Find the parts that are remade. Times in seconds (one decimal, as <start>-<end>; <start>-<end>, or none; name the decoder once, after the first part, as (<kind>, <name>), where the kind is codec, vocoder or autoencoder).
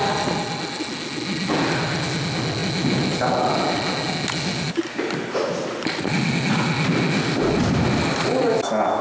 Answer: none